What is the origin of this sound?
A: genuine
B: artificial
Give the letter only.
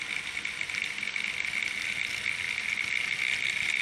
A